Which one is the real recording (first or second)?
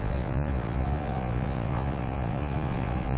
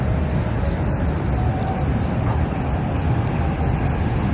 second